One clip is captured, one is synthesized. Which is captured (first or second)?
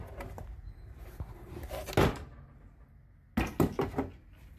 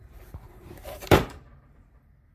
first